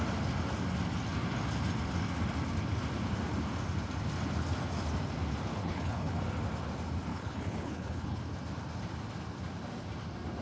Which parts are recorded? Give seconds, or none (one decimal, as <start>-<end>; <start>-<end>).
0.0-5.6; 6.2-7.1; 8.2-10.4